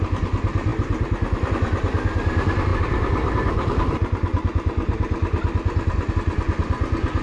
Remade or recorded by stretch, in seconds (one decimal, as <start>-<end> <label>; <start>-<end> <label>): 0.0-0.7 recorded; 0.7-1.5 remade; 1.5-2.7 recorded; 2.7-6.1 remade; 6.1-7.2 recorded